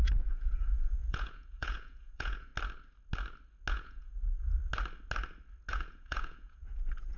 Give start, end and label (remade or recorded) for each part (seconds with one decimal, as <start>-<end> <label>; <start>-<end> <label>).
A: 0.0-2.5 remade; 2.5-3.7 recorded; 3.7-4.6 remade; 4.6-5.7 recorded; 5.7-7.2 remade